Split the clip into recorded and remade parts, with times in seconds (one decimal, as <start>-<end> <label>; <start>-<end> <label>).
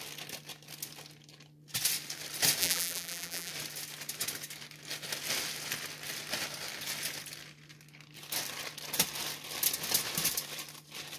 0.0-2.6 recorded; 2.6-3.5 remade; 3.5-11.2 recorded